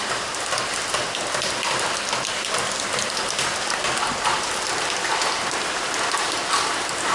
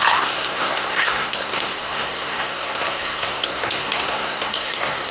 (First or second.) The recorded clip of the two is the first